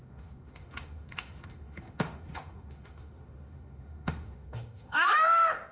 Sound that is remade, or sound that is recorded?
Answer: remade